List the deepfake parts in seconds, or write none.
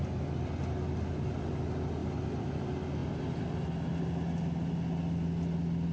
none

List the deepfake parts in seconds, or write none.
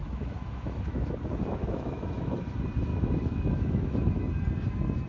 0.0-2.5 (autoencoder, DAC-VAE); 2.9-4.3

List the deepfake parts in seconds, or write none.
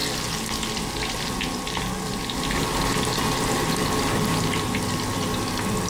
none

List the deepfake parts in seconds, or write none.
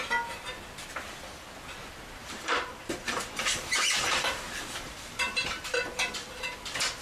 2.2-6.4 (vocoder, BigVGAN v2)